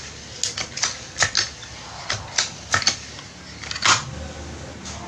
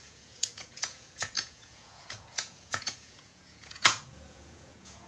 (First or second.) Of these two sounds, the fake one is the second